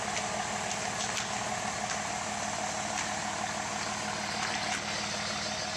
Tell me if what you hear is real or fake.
real